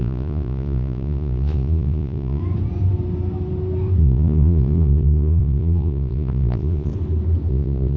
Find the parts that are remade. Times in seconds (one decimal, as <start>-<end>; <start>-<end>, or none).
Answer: 0.0-2.4; 4.0-6.9; 7.5-8.0